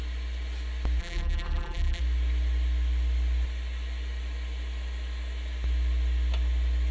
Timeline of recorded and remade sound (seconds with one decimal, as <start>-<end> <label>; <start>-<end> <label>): 0.0-1.0 recorded; 1.0-2.0 remade; 2.0-6.9 recorded